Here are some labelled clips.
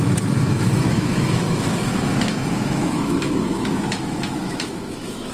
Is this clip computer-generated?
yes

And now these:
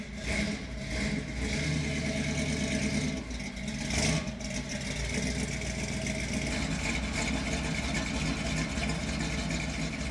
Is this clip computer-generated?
no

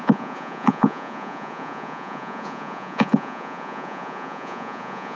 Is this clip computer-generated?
yes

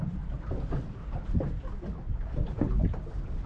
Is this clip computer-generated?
no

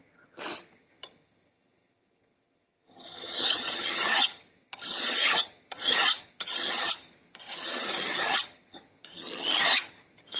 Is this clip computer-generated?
yes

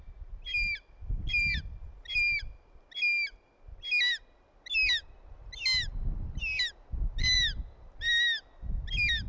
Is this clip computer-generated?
no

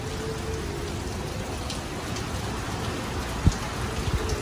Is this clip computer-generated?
no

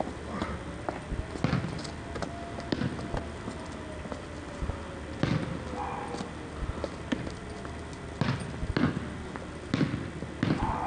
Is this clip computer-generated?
no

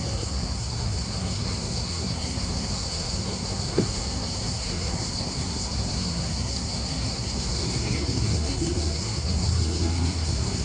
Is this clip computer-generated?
yes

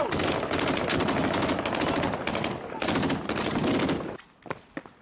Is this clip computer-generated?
no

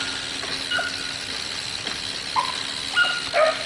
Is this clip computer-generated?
no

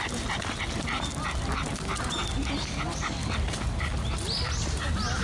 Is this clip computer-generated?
no